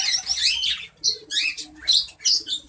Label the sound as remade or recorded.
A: recorded